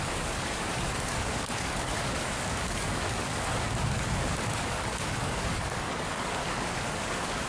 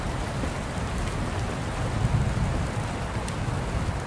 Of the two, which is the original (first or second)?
second